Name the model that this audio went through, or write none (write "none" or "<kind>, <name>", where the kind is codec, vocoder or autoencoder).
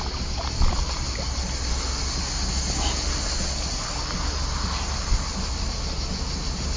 none